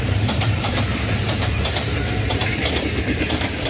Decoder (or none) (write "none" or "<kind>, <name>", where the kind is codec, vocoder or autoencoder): vocoder, BigVGAN v2